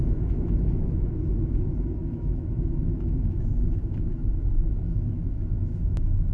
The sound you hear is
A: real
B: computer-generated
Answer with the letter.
B